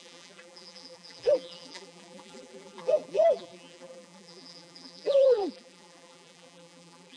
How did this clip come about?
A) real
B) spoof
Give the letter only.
B